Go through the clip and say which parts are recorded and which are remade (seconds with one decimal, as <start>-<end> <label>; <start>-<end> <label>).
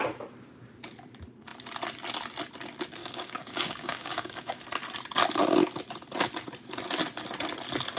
0.0-3.0 recorded; 3.0-4.6 remade; 4.6-8.0 recorded